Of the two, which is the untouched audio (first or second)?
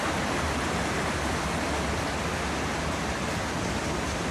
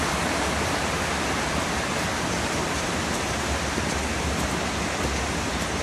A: first